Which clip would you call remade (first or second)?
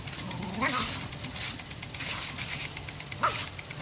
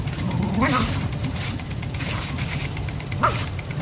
second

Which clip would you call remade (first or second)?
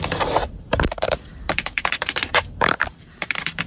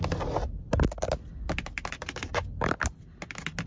first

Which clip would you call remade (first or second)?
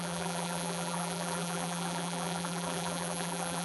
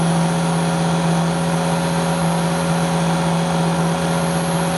first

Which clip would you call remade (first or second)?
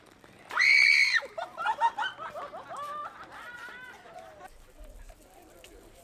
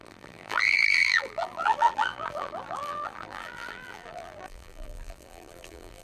second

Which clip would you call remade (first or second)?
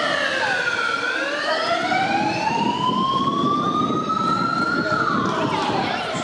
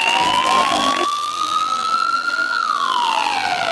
second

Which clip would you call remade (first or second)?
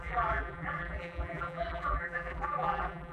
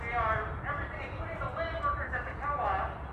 first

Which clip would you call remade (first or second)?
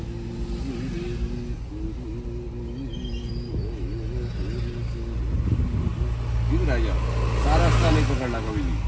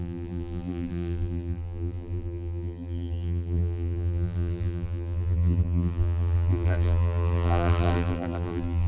second